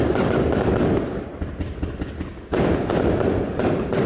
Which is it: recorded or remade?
recorded